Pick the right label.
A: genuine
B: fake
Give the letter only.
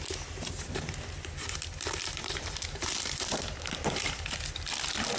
B